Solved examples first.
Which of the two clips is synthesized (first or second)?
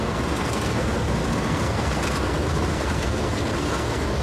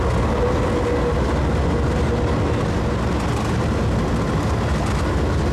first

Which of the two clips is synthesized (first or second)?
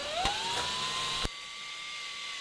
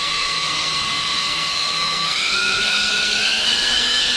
second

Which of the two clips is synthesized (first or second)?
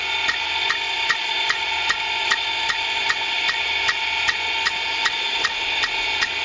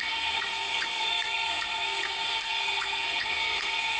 second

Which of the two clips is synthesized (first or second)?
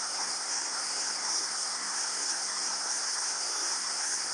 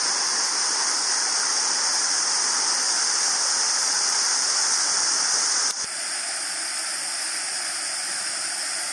first